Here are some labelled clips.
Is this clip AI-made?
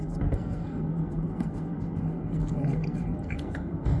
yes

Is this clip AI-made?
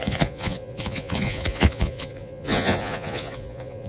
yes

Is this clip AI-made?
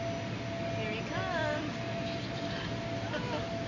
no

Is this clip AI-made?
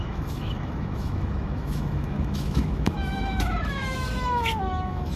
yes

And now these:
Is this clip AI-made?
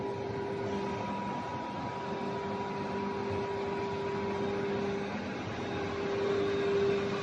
no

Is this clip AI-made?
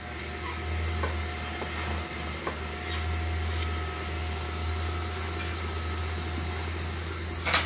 no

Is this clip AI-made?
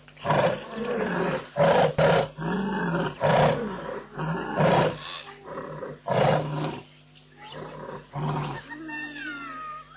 no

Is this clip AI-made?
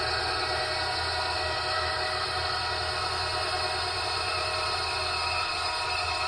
no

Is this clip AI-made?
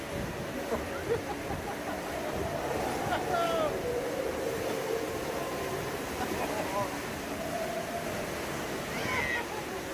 no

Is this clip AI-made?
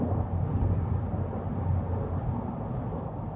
no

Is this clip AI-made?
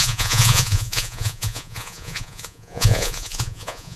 yes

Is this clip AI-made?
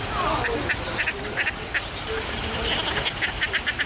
no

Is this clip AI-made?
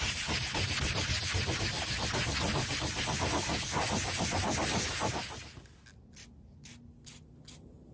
no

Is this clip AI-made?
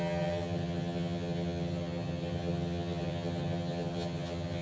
yes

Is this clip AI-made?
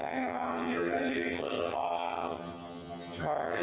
yes